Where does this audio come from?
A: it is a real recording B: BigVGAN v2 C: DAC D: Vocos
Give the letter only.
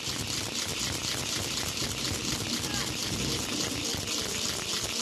A